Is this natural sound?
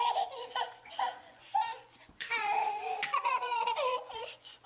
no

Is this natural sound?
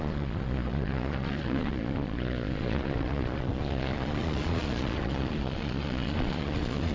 no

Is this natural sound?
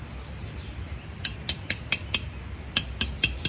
yes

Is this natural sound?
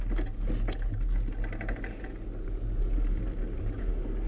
yes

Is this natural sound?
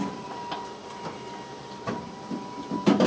yes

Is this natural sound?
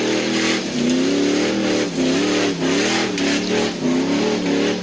yes